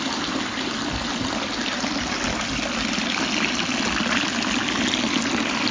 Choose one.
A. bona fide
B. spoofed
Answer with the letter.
A